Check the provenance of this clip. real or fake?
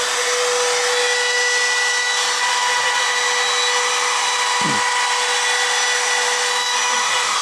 real